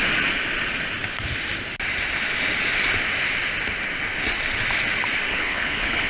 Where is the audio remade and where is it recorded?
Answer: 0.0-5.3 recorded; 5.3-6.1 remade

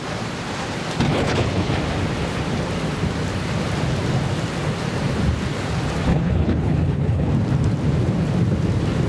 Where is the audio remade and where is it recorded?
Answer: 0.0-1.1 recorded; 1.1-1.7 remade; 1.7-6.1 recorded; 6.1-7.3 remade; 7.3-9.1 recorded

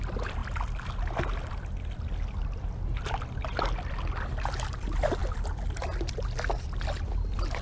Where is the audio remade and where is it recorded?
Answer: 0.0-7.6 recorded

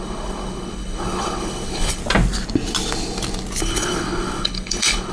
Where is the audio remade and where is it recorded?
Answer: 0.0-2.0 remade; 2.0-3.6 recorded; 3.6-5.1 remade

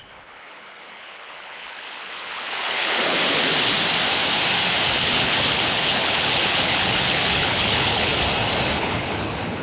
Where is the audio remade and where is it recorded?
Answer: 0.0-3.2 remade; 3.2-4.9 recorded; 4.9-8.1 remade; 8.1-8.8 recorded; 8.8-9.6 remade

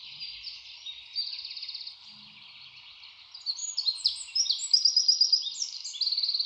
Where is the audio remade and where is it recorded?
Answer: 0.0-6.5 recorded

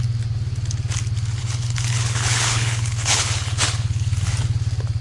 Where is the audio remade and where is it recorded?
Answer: 0.0-1.4 recorded; 1.4-4.2 remade; 4.2-5.0 recorded